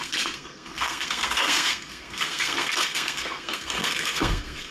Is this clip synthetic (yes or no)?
yes